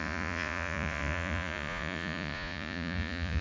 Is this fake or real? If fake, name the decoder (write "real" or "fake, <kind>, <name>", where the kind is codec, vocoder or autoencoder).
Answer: fake, vocoder, Vocos